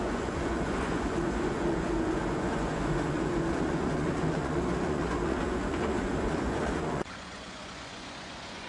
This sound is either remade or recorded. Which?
remade